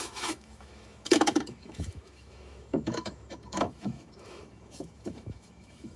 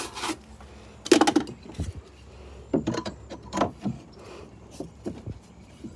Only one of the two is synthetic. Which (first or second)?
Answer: first